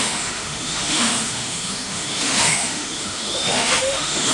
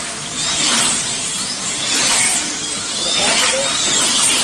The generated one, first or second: first